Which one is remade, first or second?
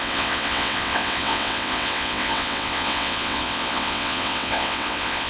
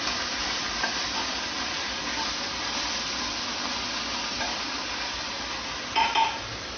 first